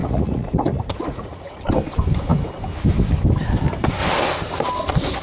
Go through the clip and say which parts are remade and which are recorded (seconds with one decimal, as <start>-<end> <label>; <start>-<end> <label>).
0.0-1.6 remade; 1.6-5.2 recorded